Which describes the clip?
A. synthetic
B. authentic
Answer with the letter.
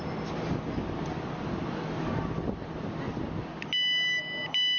B